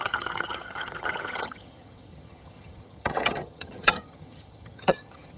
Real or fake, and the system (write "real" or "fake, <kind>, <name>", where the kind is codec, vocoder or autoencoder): fake, vocoder, HiFi-GAN